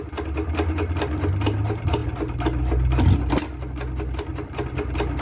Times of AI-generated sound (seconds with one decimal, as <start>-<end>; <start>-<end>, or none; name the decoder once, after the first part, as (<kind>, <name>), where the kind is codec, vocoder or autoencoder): none